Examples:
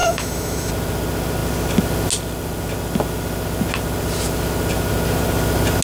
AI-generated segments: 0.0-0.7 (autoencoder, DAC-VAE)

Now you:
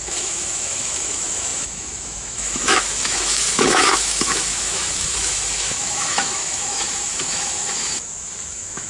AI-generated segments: 0.0-8.9 (autoencoder, DAC-VAE)

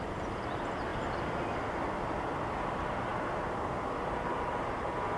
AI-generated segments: none

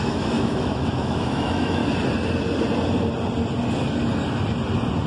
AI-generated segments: 0.0-1.8 (autoencoder, DAC-VAE)

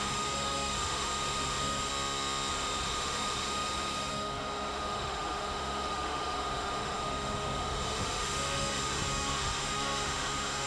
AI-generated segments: 0.0-1.9 (autoencoder, DAC-VAE); 2.5-10.7